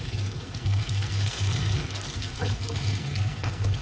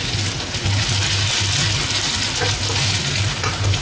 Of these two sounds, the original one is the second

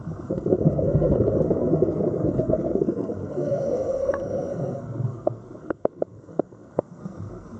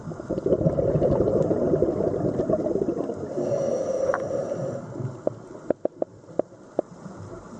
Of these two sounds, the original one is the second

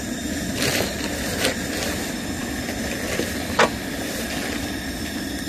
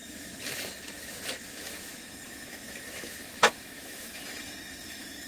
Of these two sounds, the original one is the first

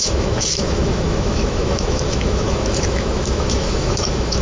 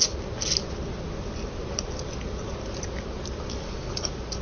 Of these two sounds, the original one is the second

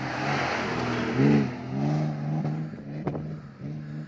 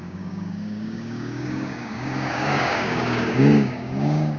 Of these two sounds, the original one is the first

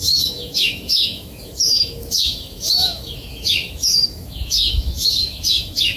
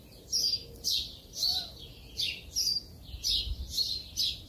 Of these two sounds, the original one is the second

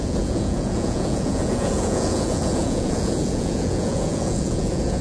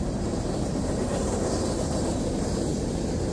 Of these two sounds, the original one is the second